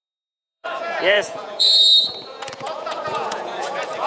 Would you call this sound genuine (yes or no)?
no